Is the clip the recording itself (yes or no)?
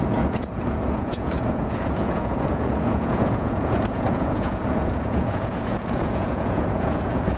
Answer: no